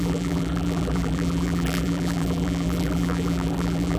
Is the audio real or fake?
fake